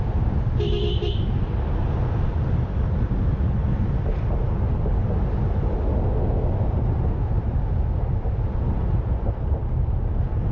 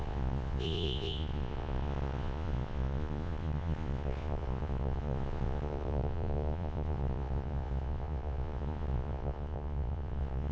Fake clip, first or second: second